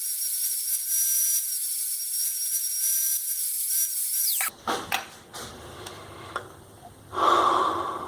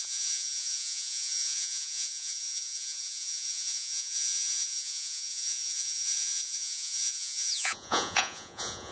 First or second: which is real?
first